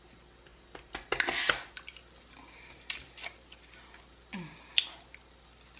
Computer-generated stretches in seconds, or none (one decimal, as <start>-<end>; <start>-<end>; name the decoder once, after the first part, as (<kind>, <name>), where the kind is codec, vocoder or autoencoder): none